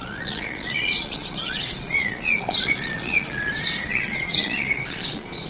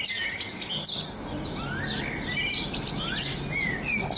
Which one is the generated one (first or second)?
first